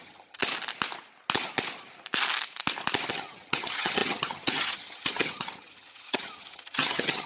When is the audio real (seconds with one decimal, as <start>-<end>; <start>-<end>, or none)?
0.4-3.1